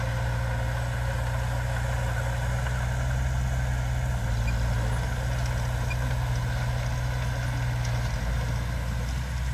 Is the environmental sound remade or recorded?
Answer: recorded